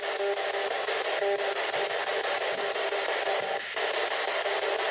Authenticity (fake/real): real